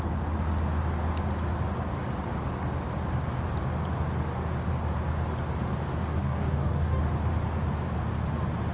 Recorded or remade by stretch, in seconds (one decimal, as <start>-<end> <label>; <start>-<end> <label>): 0.0-6.2 recorded; 6.2-7.0 remade; 7.0-8.7 recorded